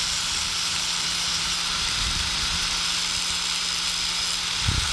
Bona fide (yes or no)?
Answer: yes